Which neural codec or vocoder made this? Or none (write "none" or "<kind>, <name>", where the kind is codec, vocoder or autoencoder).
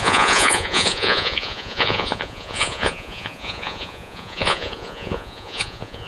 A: vocoder, Vocos